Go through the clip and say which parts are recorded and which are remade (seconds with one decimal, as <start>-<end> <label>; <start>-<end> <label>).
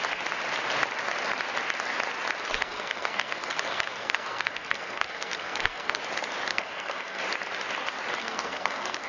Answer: 0.0-2.5 recorded; 2.5-6.0 remade; 6.0-6.5 recorded; 6.5-7.2 remade; 7.2-8.2 recorded; 8.2-9.1 remade